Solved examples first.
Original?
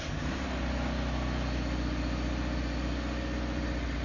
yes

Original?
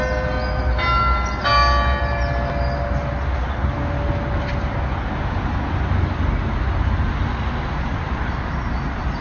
yes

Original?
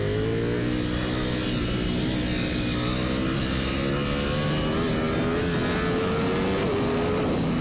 yes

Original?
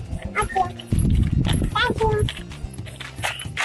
yes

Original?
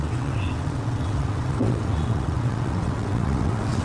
no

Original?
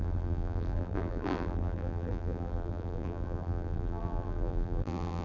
no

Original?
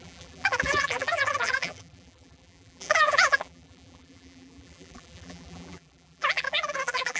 no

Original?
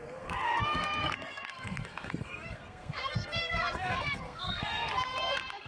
no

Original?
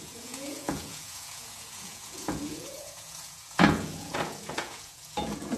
no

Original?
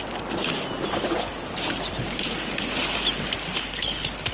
yes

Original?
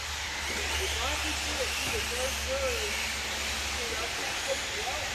yes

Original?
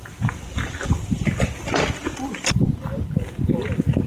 no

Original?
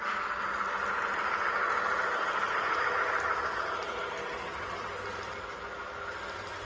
yes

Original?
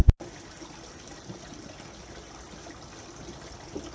yes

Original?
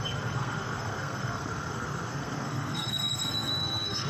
no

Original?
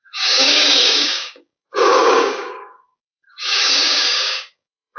no